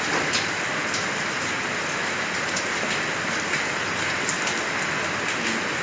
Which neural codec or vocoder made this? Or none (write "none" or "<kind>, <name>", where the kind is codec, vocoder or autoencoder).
none